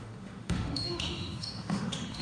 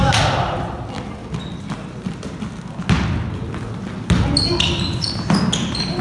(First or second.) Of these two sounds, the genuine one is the second